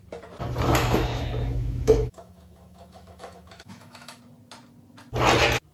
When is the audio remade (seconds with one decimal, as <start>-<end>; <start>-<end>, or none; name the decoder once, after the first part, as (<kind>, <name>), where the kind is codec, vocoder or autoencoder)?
0.8-4.2 (autoencoder, DAC-VAE)